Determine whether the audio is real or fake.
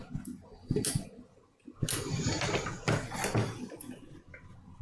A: real